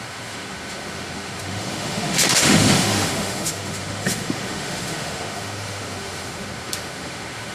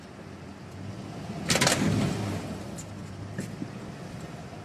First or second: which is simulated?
first